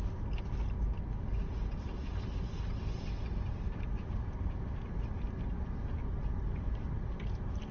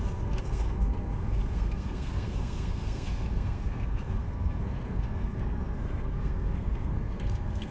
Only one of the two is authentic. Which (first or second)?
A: first